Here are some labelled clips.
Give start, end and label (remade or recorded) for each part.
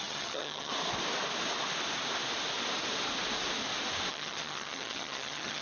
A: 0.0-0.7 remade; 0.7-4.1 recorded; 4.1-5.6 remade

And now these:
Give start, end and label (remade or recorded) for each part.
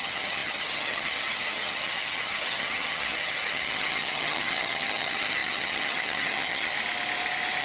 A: 0.0-6.7 remade; 6.7-7.6 recorded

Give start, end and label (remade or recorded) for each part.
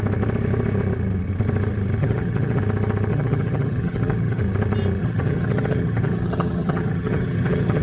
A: 0.0-2.0 recorded; 2.0-2.6 remade; 2.6-3.1 recorded; 3.1-4.4 remade; 4.4-5.0 recorded; 5.0-7.8 remade